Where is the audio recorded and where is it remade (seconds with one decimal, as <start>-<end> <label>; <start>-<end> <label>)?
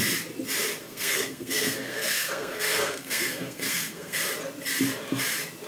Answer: 0.0-0.8 recorded; 0.8-4.2 remade; 4.2-5.7 recorded